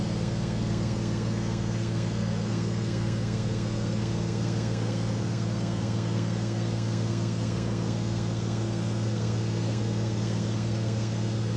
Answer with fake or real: fake